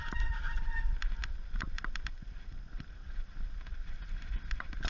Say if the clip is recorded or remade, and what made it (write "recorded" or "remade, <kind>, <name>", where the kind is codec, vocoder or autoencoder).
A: remade, vocoder, BigVGAN v2